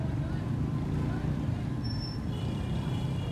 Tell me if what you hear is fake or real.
fake